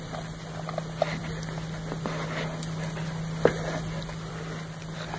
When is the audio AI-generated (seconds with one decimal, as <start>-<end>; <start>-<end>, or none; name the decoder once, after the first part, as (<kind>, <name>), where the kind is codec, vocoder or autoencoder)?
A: none